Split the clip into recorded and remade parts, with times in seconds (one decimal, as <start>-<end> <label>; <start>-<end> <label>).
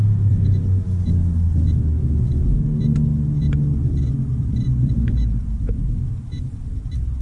0.0-4.3 recorded; 4.3-5.8 remade; 5.8-7.2 recorded